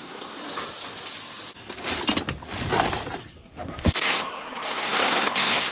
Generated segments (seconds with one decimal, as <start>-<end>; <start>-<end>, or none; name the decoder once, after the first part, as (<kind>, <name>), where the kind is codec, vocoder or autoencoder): 0.0-0.4 (codec, SNAC); 3.2-5.7

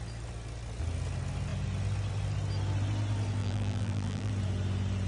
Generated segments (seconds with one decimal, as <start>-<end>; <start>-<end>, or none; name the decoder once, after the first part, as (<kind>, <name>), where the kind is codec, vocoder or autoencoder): 3.4-4.3 (vocoder, BigVGAN v2)

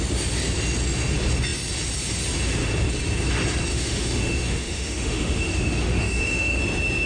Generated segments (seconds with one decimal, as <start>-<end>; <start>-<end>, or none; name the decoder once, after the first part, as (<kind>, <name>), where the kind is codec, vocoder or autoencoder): 3.7-6.6 (autoencoder, DAC-VAE)

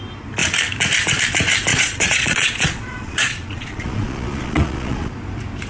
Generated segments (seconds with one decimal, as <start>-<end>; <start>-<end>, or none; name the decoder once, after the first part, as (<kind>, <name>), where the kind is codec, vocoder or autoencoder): 1.7-5.1 (vocoder, Vocos)

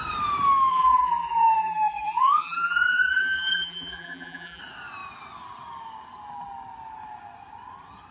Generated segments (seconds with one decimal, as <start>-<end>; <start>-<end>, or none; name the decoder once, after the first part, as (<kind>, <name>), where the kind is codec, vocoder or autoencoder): 0.7-4.6 (vocoder, BigVGAN v2)

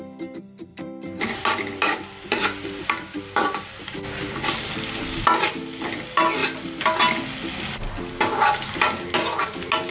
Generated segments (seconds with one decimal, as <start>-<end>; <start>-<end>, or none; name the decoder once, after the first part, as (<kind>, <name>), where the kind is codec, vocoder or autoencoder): 0.7-2.9 (vocoder, BigVGAN v2)

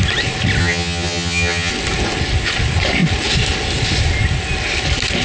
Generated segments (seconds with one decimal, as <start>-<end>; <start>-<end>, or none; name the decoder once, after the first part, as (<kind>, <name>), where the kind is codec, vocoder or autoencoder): 0.6-1.7 (vocoder, HiFi-GAN)